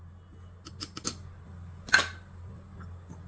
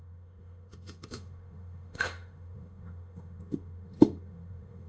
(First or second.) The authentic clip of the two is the first